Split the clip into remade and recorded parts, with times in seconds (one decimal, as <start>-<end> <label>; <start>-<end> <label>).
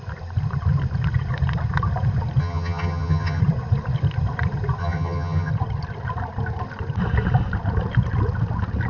0.0-2.4 recorded; 2.4-3.4 remade; 3.4-4.8 recorded; 4.8-5.5 remade; 5.5-8.9 recorded